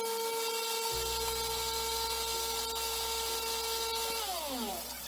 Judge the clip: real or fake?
real